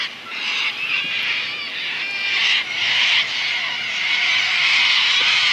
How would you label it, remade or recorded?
recorded